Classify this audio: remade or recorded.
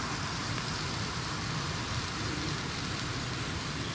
recorded